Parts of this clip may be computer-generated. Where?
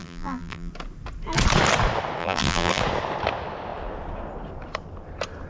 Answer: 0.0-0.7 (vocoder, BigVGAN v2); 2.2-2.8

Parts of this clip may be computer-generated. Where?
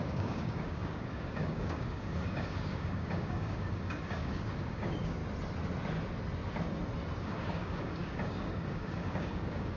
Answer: 0.0-5.2 (codec, DAC); 7.2-9.8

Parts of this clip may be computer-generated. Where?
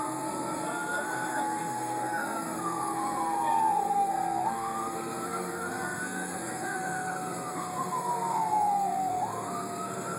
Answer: 0.0-10.2 (codec, SNAC)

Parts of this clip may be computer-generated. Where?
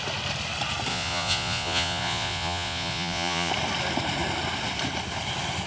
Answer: 0.9-3.5 (vocoder, Vocos)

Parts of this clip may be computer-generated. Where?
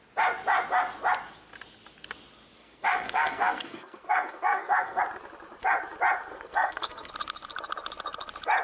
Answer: 2.6-5.0 (codec, SNAC); 6.3-7.1